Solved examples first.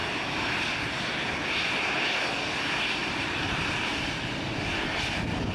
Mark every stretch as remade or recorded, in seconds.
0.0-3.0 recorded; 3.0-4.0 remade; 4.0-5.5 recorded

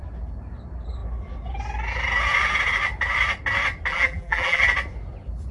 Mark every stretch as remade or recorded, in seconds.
0.0-3.9 recorded; 3.9-4.6 remade; 4.6-5.5 recorded

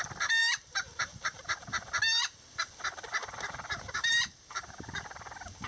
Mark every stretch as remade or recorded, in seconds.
0.0-0.4 recorded; 0.4-1.9 remade; 1.9-3.2 recorded; 3.2-5.3 remade; 5.3-5.7 recorded

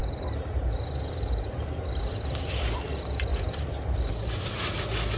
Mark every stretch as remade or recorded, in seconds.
0.0-2.0 remade; 2.0-3.3 recorded; 3.3-4.8 remade; 4.8-5.2 recorded